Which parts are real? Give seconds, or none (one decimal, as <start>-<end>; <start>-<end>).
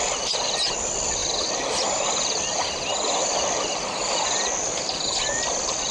0.0-5.9